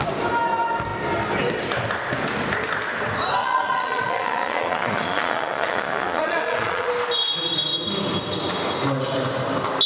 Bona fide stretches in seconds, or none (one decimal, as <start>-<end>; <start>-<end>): 0.0-3.4; 6.9-9.9